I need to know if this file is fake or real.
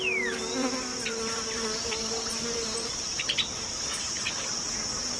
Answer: real